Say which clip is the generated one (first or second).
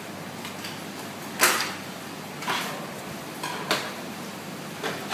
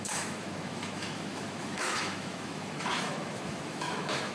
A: second